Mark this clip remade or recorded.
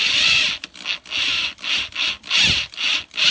recorded